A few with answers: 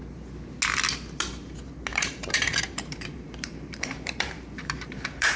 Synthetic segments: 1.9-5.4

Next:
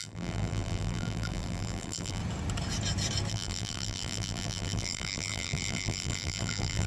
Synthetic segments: 0.0-2.2; 3.3-6.9